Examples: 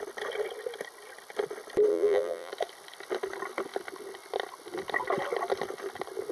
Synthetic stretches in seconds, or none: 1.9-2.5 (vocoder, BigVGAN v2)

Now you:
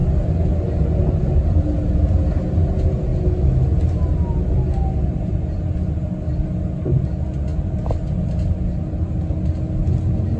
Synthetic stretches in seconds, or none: none

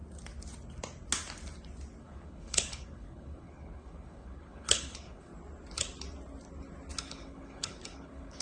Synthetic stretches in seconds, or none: 2.0-5.3 (codec, HILCodec); 7.0-8.4

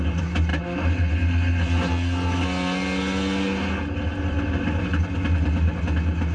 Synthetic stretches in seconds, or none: none

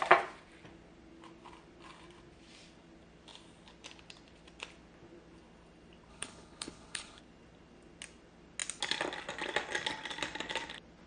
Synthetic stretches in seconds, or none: 6.1-7.2 (codec, HILCodec)